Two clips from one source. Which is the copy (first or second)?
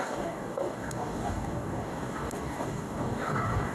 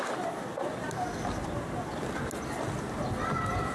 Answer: first